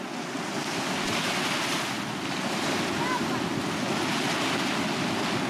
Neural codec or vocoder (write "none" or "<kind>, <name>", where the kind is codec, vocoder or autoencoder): none